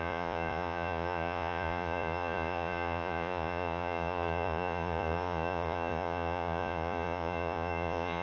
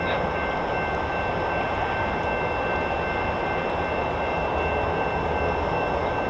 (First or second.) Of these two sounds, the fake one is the first